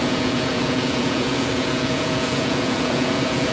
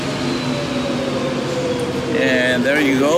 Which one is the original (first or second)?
second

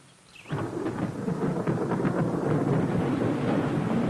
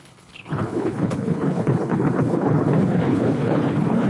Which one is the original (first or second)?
first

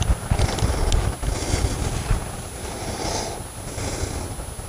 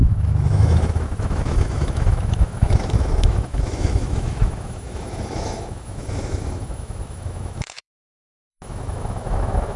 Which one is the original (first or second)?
first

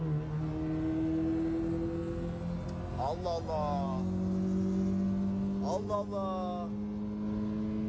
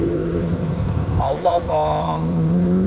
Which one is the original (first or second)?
first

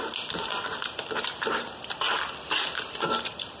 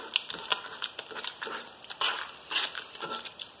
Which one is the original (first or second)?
second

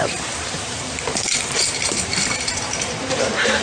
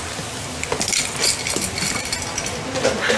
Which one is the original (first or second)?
second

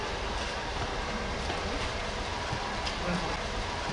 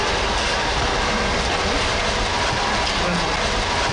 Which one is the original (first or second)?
second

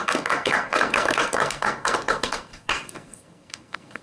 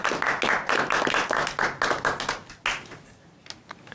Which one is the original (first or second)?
second